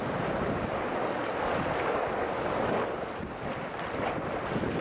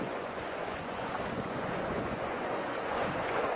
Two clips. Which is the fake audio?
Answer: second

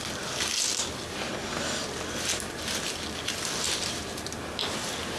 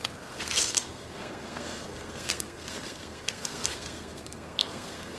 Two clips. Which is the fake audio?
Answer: second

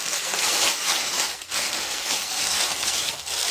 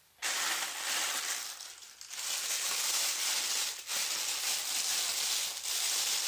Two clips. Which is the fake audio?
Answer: first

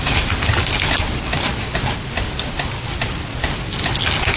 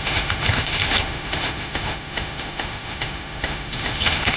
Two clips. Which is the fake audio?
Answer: second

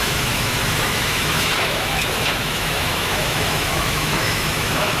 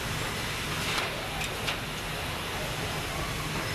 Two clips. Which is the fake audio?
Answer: first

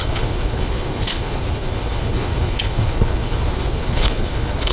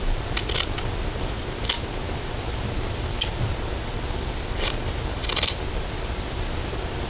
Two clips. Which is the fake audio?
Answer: first